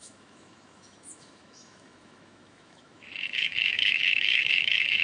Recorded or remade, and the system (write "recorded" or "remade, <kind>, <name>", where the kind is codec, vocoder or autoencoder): remade, autoencoder, DAC-VAE